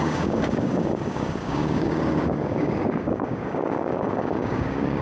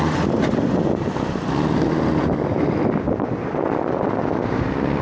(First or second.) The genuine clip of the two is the second